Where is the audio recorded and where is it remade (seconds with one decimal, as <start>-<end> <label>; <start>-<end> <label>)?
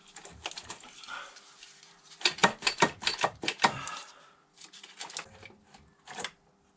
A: 0.0-2.4 recorded; 2.4-4.6 remade; 4.6-6.8 recorded